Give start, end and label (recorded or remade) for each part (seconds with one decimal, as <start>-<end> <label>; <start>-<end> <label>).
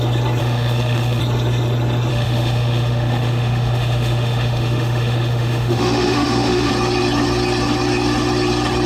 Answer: 0.0-0.4 recorded; 0.4-1.2 remade; 1.2-2.1 recorded; 2.1-6.7 remade; 6.7-8.9 recorded